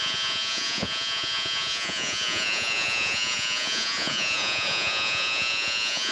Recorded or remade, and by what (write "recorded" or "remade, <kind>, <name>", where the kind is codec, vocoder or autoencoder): remade, vocoder, Vocos